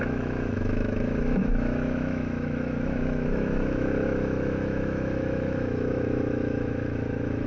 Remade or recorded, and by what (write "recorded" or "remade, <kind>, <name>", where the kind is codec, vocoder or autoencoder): remade, autoencoder, DAC-VAE